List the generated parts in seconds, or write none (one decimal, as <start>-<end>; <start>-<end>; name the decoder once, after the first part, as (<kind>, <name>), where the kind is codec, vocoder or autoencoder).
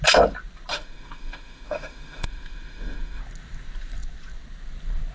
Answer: 0.7-3.2 (autoencoder, DAC-VAE)